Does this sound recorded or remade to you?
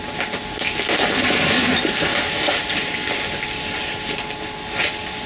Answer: recorded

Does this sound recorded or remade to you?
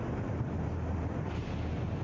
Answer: recorded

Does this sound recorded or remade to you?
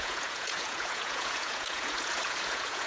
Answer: remade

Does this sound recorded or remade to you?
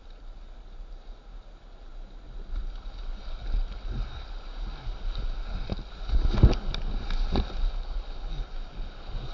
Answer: recorded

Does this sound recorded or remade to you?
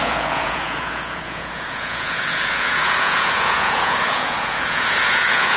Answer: remade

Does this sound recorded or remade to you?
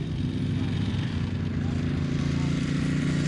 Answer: recorded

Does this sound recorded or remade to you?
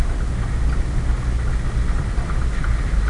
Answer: recorded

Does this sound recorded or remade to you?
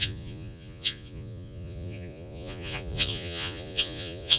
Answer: remade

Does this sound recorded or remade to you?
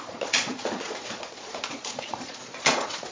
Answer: remade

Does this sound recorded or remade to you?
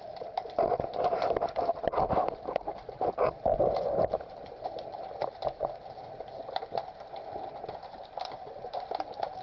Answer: recorded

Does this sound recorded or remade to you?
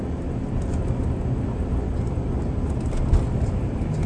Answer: recorded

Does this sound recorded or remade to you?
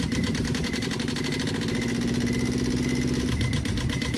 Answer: recorded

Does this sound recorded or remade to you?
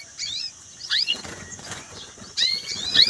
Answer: remade